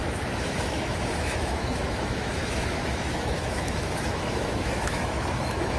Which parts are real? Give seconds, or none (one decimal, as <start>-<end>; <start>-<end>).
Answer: none